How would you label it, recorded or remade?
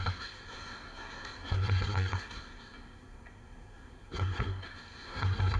remade